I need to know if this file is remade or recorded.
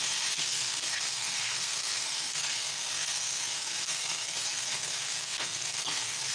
remade